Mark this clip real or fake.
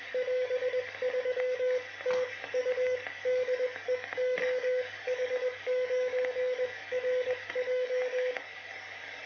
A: fake